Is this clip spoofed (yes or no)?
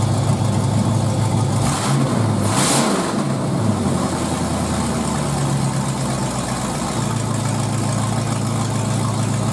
no